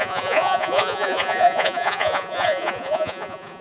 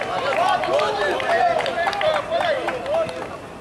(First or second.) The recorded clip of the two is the second